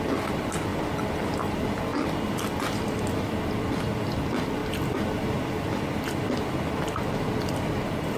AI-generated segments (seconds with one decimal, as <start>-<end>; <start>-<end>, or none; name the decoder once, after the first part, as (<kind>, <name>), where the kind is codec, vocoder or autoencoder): 0.7-1.5 (vocoder, BigVGAN v2); 1.9-2.8; 4.6-7.3